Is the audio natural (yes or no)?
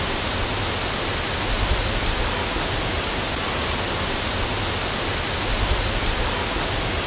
yes